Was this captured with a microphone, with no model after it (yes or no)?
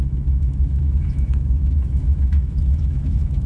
no